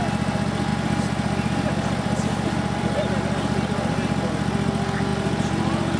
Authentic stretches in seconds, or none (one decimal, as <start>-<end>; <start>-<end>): 0.0-0.7; 4.3-5.1